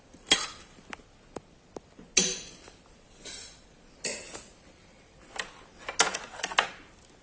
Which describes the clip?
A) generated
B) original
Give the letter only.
B